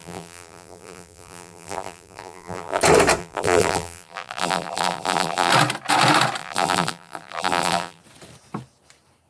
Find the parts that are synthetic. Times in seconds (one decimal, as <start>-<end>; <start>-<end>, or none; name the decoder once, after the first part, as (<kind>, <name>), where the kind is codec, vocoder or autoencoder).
0.0-2.8 (vocoder, BigVGAN v2); 3.2-5.5; 6.4-8.0